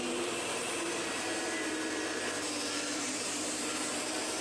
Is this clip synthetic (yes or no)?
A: yes